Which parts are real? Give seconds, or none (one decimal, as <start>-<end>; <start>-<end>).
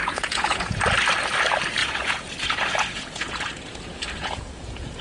0.8-1.8